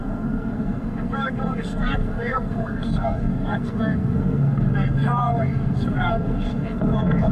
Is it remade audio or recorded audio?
remade